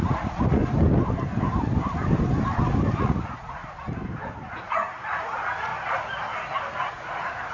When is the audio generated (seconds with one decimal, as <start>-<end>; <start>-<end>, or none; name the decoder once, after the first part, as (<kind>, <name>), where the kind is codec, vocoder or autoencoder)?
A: 0.0-0.6 (vocoder, Vocos); 3.0-3.6; 4.5-5.7; 6.8-7.5